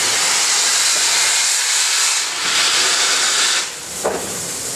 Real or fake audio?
real